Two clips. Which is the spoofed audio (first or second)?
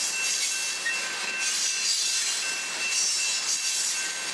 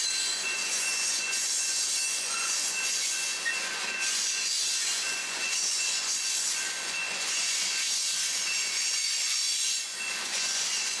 second